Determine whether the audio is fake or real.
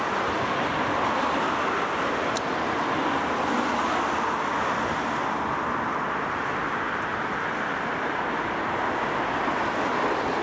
real